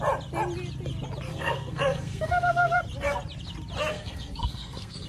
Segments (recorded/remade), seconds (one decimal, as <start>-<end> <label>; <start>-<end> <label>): 0.0-1.3 recorded; 1.3-2.8 remade; 2.8-3.9 recorded; 3.9-5.1 remade